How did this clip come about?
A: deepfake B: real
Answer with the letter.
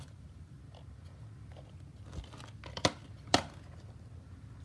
B